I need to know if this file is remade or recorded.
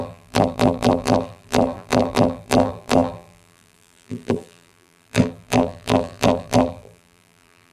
remade